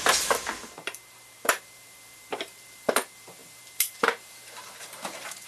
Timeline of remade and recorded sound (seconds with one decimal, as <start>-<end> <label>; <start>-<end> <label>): 0.0-5.5 remade